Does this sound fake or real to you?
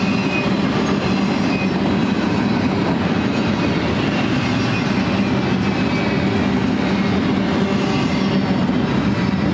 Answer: real